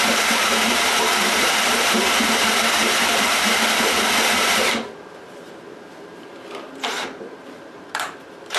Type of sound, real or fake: fake